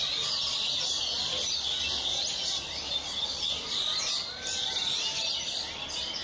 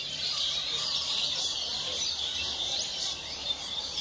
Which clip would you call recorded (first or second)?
first